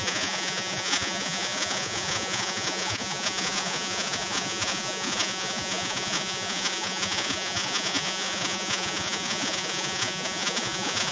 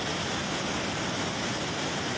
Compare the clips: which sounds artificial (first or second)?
first